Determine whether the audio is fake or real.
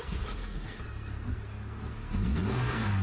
fake